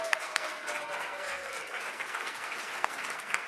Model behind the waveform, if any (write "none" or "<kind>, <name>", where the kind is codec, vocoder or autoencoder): codec, SNAC